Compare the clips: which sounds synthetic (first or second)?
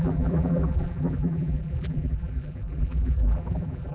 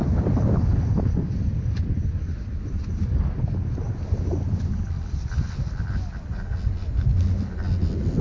first